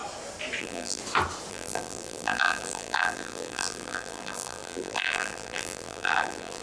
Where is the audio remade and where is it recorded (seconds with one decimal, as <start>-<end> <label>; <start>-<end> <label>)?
0.0-0.6 recorded; 0.6-1.0 remade; 1.0-1.5 recorded; 1.5-6.6 remade